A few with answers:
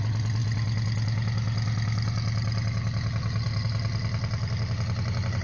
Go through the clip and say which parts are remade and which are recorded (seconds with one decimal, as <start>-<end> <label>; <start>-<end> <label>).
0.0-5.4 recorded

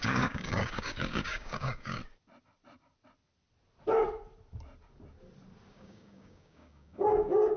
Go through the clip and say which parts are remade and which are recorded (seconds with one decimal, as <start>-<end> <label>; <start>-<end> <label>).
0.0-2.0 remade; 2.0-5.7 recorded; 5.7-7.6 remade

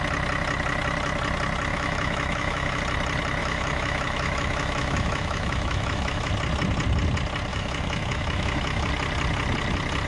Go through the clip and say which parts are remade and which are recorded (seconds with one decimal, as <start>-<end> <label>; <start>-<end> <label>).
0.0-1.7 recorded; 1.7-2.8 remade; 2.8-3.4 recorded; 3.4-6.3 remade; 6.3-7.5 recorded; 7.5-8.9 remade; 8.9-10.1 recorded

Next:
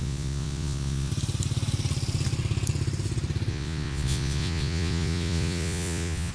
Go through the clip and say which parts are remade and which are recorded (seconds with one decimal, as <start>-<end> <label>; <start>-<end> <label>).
0.0-1.1 remade; 1.1-3.5 recorded; 3.5-6.3 remade

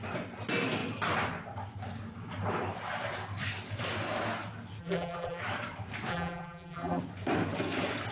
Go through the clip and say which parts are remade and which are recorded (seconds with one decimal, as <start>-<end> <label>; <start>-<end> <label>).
0.0-4.8 recorded; 4.8-5.4 remade; 5.4-6.1 recorded; 6.1-7.0 remade; 7.0-8.1 recorded